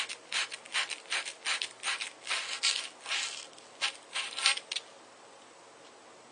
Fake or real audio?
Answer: real